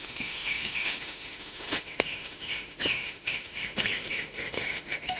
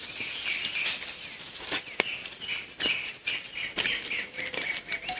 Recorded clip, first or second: second